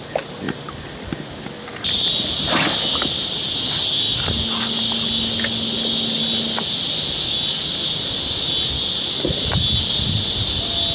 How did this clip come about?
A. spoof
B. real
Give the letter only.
B